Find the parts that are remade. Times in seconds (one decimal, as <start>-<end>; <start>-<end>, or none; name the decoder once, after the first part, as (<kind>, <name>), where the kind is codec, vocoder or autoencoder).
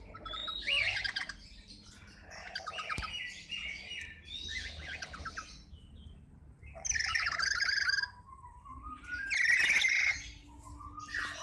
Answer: none